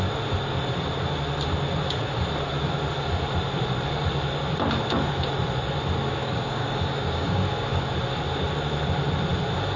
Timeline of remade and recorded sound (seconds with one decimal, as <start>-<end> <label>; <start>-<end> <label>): 0.0-6.2 recorded; 6.2-7.8 remade; 7.8-9.8 recorded